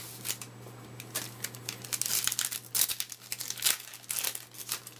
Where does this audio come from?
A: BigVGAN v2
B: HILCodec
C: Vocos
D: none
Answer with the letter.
D